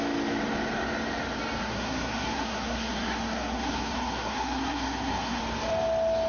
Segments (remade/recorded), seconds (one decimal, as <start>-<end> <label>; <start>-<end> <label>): 0.0-1.6 recorded; 1.6-5.4 remade; 5.4-6.3 recorded